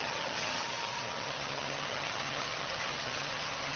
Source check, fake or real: fake